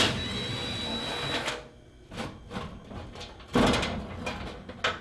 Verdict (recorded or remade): recorded